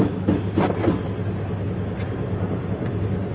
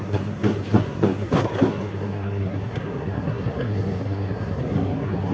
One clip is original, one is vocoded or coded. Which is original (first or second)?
first